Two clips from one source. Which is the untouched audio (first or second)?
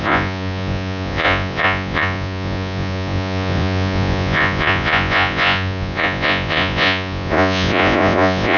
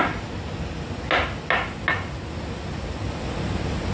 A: second